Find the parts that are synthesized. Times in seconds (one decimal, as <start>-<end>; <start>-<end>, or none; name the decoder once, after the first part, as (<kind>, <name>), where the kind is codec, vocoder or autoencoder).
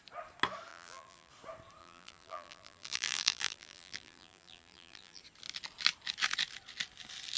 0.7-1.3 (vocoder, BigVGAN v2); 1.8-5.2